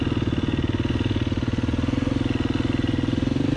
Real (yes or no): yes